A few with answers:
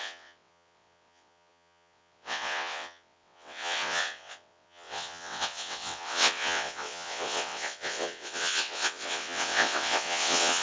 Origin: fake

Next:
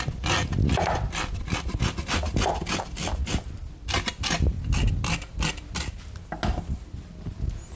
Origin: real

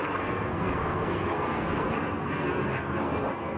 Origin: fake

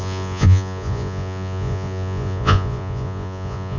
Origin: fake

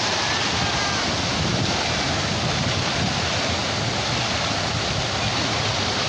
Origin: real